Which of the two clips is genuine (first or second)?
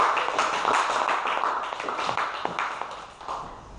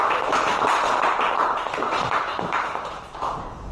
first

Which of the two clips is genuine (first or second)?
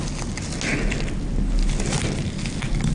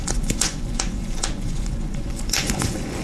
first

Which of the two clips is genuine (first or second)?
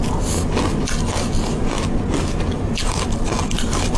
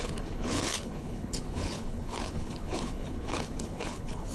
first